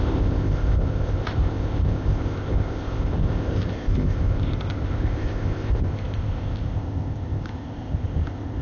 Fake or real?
fake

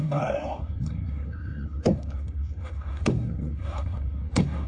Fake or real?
fake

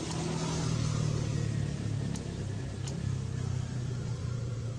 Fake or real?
real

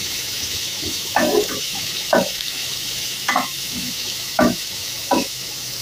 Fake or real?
fake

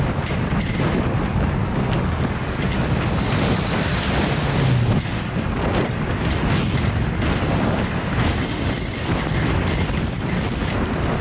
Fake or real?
real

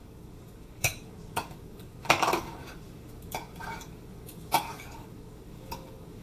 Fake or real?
fake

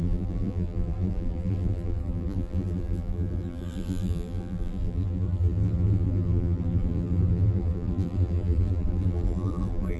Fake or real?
fake